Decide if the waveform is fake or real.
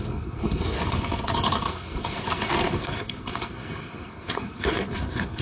fake